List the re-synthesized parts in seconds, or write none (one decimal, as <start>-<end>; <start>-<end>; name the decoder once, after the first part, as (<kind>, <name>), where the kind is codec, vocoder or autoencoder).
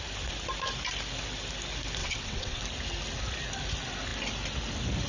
2.0-2.6 (vocoder, WaveNeXt)